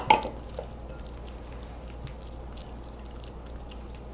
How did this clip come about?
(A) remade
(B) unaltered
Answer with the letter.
B